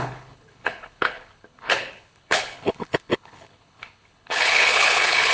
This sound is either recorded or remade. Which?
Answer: remade